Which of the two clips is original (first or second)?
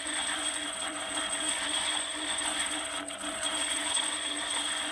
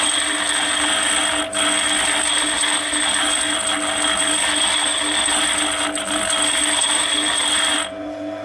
second